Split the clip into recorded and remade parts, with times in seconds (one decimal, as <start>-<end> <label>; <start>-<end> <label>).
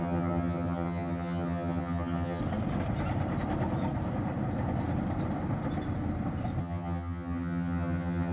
0.0-2.4 remade; 2.4-6.6 recorded; 6.6-8.3 remade